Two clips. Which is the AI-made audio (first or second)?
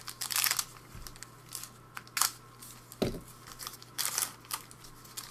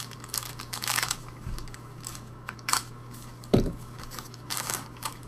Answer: second